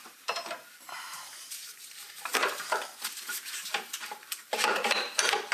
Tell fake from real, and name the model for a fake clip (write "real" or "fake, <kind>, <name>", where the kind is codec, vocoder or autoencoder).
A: fake, vocoder, BigVGAN v2